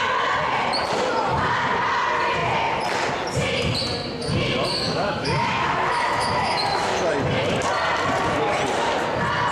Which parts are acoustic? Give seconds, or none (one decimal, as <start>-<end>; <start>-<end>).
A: 0.0-4.7; 6.9-9.5